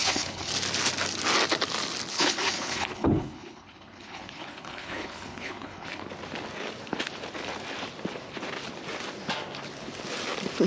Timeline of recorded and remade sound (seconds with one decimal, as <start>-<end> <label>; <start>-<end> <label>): 0.0-0.5 remade; 0.5-2.1 recorded; 2.1-6.0 remade; 6.0-10.7 recorded